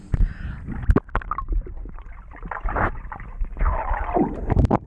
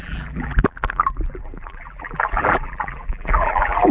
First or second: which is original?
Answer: first